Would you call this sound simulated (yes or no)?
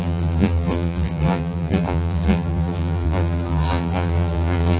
yes